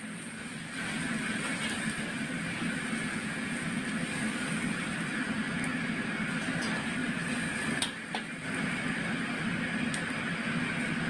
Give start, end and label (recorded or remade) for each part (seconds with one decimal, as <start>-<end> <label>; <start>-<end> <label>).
0.0-3.1 recorded; 3.1-3.8 remade; 3.8-11.1 recorded